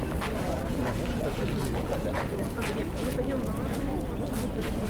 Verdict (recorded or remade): recorded